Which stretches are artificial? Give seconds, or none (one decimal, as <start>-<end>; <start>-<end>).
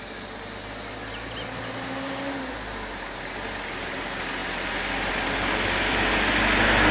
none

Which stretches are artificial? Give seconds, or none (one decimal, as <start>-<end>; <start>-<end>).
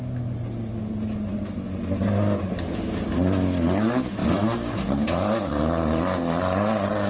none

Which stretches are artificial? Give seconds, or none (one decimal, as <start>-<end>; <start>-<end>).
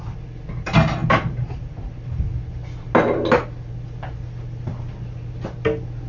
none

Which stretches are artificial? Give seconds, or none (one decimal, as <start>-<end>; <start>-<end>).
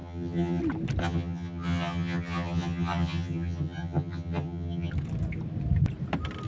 0.0-0.6; 1.0-4.9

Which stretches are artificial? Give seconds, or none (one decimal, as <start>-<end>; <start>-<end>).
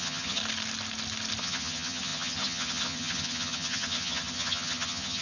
0.0-0.4; 1.4-5.2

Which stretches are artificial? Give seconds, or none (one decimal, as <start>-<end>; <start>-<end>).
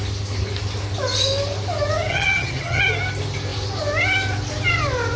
2.1-2.8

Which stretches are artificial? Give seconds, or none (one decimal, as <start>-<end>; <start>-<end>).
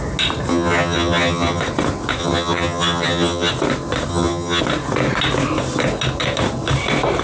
0.5-1.6; 2.2-3.5; 4.1-4.6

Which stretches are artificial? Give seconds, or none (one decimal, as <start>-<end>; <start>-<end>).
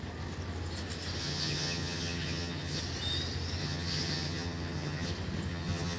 1.2-2.8; 3.6-5.1; 5.5-6.0